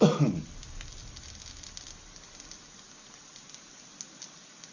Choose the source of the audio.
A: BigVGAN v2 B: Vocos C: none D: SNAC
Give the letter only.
C